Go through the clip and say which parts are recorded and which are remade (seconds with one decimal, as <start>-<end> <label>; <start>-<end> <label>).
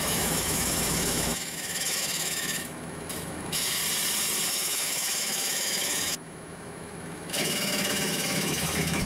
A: 0.0-3.8 remade; 3.8-4.5 recorded; 4.5-9.1 remade